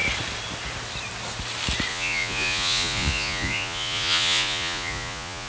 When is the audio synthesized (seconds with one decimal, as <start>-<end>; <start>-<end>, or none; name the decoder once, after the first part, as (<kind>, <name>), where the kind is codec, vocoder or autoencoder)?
1.9-5.5 (vocoder, Vocos)